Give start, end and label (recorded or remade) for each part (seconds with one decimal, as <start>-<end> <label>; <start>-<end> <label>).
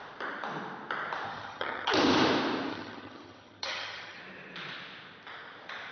0.0-1.3 recorded; 1.3-1.9 remade; 1.9-2.7 recorded; 2.7-4.2 remade; 4.2-5.9 recorded